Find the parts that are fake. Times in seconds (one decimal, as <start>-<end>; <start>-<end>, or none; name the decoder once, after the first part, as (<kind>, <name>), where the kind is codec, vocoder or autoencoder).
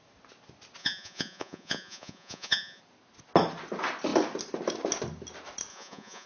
0.8-2.8 (vocoder, Vocos); 5.7-6.3